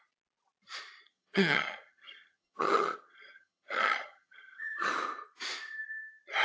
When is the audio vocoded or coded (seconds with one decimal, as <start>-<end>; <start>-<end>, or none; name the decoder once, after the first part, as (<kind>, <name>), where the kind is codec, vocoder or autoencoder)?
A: 1.1-4.9 (vocoder, HiFi-GAN)